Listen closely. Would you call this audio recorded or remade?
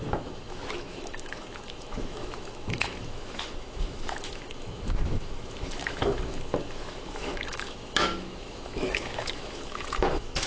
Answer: remade